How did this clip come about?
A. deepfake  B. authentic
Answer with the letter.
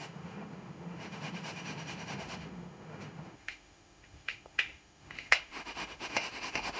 A